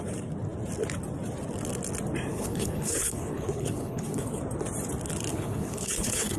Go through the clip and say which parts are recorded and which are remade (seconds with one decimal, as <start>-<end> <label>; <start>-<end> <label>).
0.0-2.3 recorded; 2.3-4.4 remade; 4.4-5.3 recorded; 5.3-6.4 remade